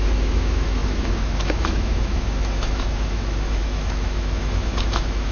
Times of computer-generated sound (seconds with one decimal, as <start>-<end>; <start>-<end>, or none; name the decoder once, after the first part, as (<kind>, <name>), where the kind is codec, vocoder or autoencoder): 0.0-5.3 (autoencoder, DAC-VAE)